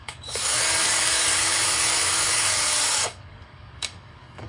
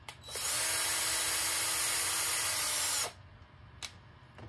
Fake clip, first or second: first